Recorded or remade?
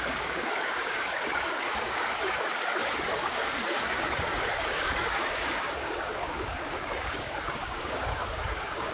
remade